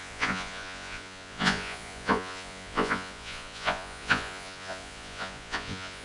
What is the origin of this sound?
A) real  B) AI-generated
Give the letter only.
B